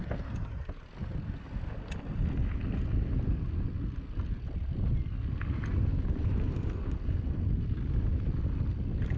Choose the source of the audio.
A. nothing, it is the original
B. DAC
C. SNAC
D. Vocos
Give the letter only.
A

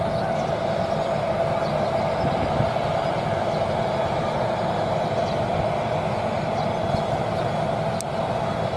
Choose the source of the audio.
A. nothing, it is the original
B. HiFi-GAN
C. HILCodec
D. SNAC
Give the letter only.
A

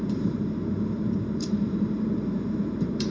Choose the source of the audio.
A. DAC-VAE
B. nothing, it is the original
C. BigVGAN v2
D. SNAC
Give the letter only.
C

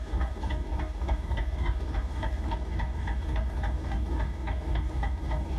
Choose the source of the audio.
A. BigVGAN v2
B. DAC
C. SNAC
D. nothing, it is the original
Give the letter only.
B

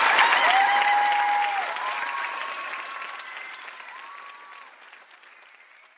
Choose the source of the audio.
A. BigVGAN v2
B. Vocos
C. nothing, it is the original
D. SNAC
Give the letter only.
C